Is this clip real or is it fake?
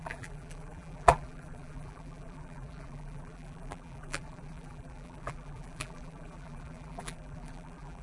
fake